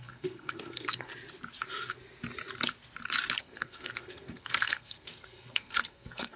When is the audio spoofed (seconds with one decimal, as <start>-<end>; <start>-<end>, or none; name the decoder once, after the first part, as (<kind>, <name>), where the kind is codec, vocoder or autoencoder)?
0.0-1.1 (codec, SNAC); 3.4-6.4